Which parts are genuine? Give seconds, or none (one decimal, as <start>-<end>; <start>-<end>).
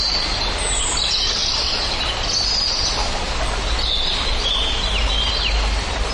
0.0-6.1